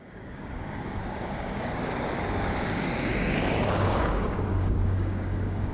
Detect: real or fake fake